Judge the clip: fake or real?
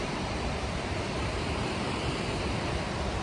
fake